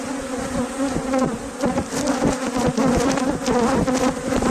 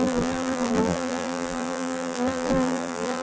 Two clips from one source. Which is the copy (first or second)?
second